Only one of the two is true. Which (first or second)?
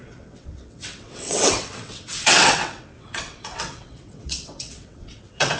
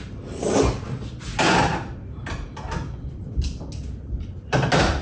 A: second